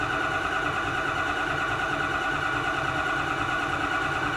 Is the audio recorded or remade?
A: recorded